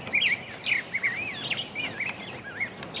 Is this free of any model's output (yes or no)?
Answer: yes